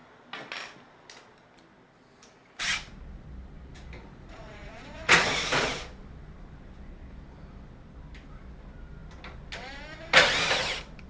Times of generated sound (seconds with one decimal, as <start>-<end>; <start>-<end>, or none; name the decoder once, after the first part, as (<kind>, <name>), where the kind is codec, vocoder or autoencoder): 4.1-5.3 (vocoder, Vocos)